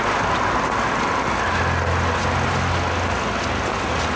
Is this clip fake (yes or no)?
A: no